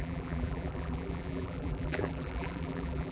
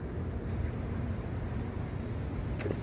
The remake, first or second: first